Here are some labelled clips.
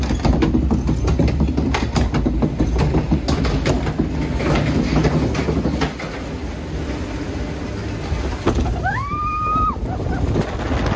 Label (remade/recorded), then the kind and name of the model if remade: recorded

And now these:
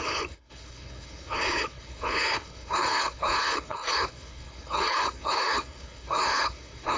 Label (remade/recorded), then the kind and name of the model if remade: remade, codec, HILCodec